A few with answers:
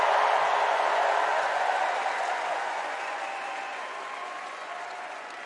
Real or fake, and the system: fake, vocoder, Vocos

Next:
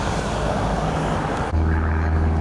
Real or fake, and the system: fake, codec, DAC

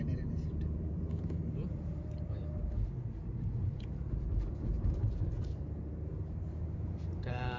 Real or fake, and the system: fake, vocoder, BigVGAN v2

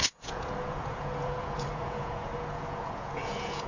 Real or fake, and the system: fake, vocoder, Vocos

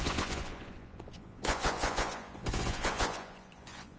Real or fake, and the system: fake, vocoder, Vocos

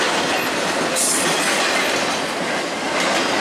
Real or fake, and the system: real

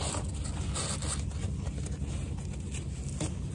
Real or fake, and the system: real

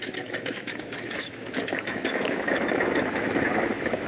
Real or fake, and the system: fake, autoencoder, DAC-VAE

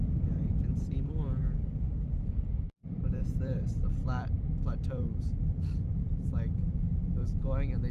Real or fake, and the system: fake, vocoder, BigVGAN v2